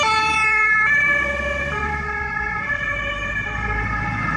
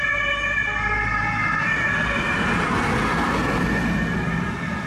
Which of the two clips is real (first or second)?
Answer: second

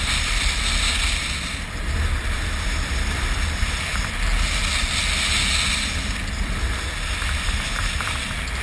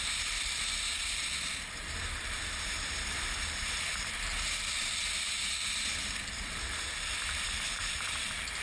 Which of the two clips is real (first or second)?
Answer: first